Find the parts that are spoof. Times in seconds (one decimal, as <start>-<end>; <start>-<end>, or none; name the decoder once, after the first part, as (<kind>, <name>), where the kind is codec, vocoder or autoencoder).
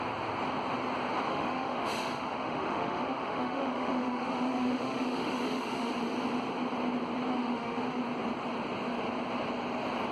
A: 1.3-5.9 (autoencoder, DAC-VAE); 7.3-8.0